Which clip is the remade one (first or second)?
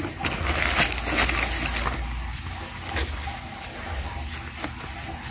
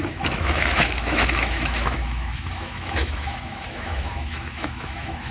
second